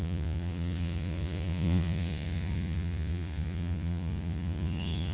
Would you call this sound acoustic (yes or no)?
no